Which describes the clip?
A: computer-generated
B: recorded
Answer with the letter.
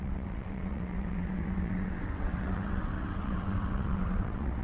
A